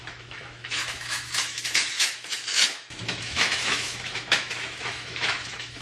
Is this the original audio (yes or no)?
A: no